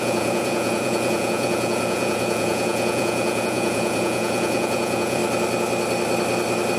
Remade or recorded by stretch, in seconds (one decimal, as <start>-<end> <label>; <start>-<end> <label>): 0.0-5.2 remade; 5.2-6.8 recorded